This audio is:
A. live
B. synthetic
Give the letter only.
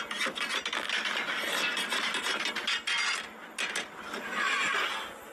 A